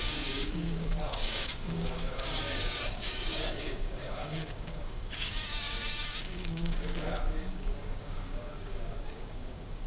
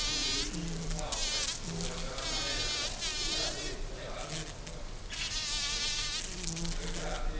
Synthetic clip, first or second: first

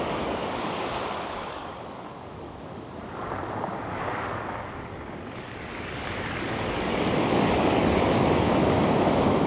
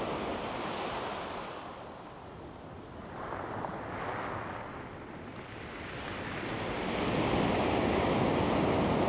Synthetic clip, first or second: first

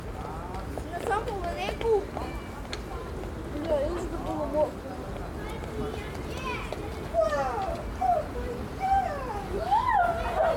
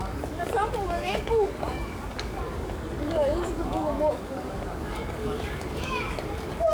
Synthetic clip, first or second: second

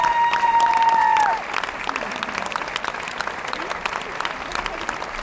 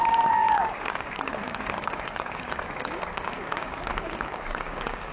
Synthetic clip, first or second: second